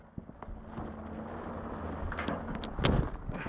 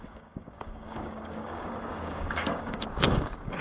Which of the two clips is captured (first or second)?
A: first